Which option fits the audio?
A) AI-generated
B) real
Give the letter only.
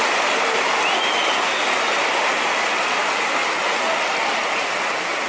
B